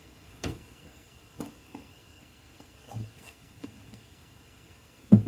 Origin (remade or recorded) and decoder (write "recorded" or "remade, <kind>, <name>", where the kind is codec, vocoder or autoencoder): remade, codec, SNAC